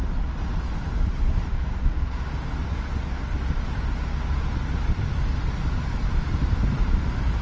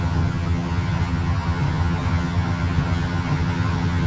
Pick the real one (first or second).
first